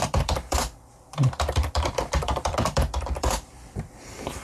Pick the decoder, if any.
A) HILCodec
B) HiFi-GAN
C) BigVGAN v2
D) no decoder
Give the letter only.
C